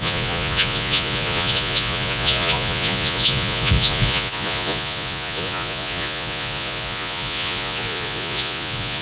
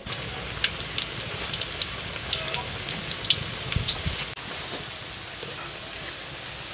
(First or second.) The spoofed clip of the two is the first